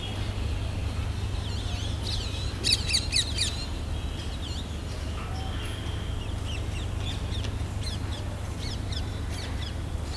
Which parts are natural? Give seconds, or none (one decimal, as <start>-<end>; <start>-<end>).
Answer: 0.0-10.2